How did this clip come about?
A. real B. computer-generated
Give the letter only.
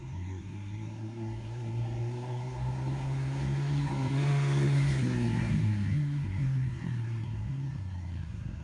B